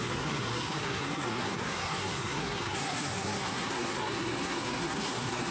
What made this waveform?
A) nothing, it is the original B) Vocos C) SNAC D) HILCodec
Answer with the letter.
C